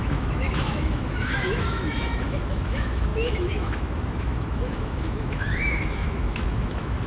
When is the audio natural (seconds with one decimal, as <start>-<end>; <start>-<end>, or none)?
none